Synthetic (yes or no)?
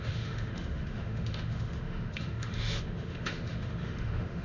yes